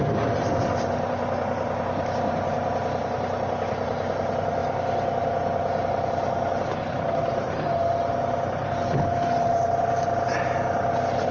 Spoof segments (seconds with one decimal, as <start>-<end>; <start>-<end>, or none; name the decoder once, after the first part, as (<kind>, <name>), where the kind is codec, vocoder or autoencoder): none